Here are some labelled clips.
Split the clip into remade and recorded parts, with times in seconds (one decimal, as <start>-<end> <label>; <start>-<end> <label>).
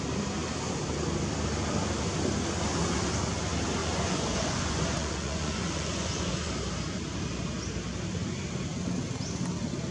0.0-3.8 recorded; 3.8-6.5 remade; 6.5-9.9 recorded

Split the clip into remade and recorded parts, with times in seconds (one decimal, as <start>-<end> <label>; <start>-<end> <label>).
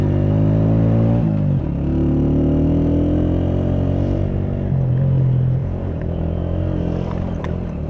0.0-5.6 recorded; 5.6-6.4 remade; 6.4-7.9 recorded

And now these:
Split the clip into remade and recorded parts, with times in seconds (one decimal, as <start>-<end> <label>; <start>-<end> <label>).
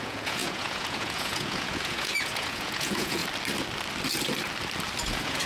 0.0-3.2 remade; 3.2-5.0 recorded; 5.0-5.5 remade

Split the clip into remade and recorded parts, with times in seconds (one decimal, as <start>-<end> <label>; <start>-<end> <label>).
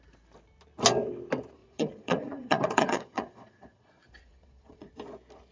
0.0-1.6 recorded; 1.6-4.9 remade; 4.9-5.5 recorded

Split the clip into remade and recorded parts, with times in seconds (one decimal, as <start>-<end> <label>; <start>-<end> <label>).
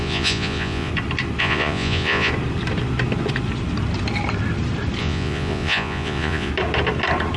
0.0-0.9 remade; 0.9-1.4 recorded; 1.4-2.3 remade; 2.3-5.0 recorded; 5.0-6.5 remade; 6.5-7.4 recorded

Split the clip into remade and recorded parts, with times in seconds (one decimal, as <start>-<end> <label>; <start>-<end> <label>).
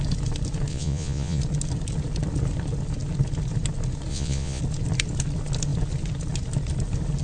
0.0-0.7 recorded; 0.7-1.4 remade; 1.4-4.1 recorded; 4.1-4.6 remade; 4.6-7.2 recorded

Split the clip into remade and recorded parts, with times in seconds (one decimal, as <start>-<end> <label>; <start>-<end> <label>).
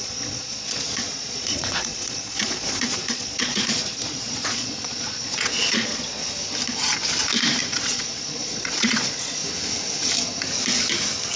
0.0-6.2 remade; 6.2-7.6 recorded; 7.6-9.4 remade; 9.4-11.4 recorded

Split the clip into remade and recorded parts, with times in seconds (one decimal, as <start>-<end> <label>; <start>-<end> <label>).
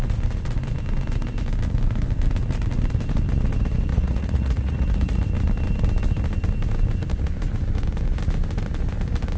0.0-3.9 recorded; 3.9-5.2 remade; 5.2-9.4 recorded